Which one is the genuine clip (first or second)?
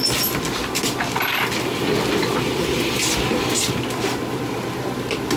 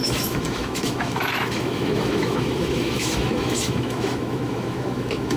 first